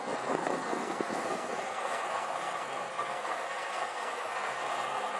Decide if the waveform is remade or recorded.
remade